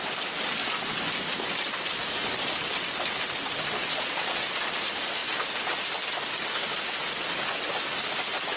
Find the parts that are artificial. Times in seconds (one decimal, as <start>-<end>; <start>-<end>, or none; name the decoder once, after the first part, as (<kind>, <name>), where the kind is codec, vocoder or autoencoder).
3.8-4.5 (vocoder, Vocos)